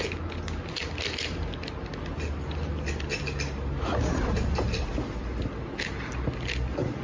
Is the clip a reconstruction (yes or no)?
no